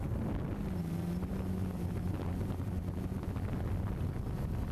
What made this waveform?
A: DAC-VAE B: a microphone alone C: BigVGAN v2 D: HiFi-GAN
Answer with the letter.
B